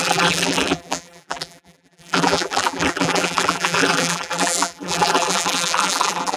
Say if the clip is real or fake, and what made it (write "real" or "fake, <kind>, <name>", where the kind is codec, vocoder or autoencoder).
fake, vocoder, BigVGAN v2